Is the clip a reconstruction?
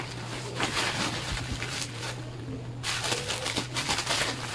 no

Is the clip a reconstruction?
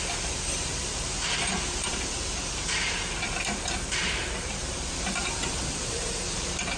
yes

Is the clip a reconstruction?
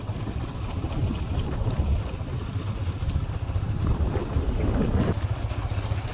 no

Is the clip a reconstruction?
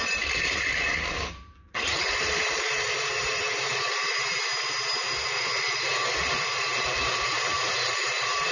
yes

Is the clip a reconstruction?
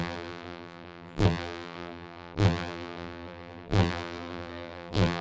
yes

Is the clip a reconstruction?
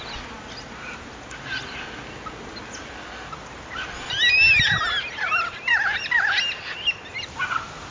no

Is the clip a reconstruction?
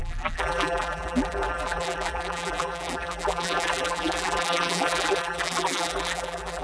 yes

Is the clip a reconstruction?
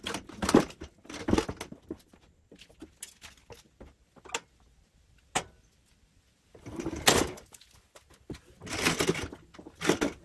no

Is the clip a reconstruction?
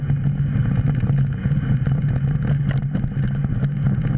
no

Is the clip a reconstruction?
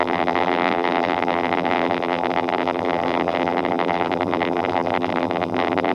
yes